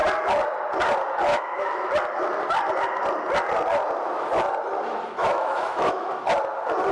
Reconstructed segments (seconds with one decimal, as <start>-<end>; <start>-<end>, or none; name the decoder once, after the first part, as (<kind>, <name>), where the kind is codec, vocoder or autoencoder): 1.3-1.9 (autoencoder, DAC-VAE); 5.2-6.1